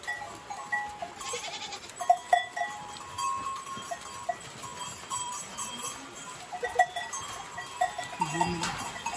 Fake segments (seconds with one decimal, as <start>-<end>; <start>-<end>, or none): 1.0-1.9; 2.3-3.1; 4.7-5.3